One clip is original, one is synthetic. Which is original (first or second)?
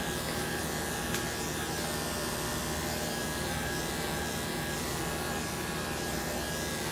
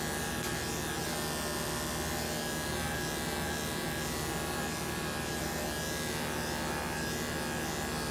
second